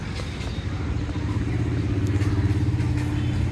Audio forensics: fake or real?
real